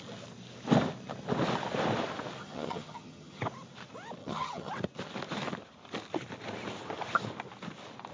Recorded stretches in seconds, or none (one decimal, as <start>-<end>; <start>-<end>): 0.0-2.4; 3.4-4.2; 4.7-8.1